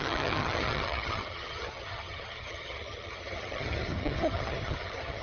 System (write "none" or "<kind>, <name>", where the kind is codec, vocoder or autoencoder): vocoder, HiFi-GAN